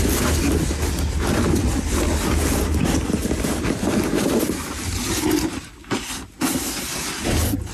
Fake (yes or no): no